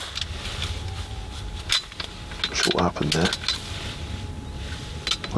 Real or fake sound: real